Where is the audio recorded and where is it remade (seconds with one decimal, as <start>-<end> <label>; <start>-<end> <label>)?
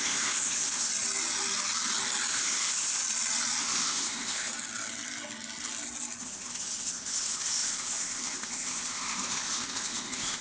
0.0-0.9 remade; 0.9-2.3 recorded; 2.3-3.0 remade; 3.0-3.6 recorded; 3.6-4.5 remade; 4.5-6.2 recorded; 6.2-10.4 remade